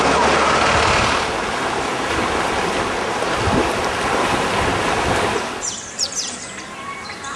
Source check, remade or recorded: recorded